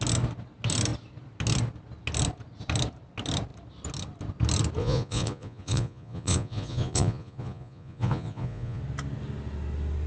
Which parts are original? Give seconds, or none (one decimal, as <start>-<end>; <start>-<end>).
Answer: 0.0-4.8; 8.8-10.1